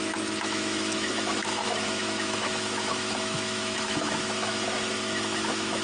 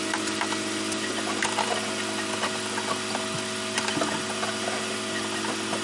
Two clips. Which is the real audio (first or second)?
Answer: second